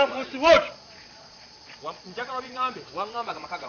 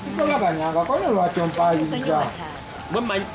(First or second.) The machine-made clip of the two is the first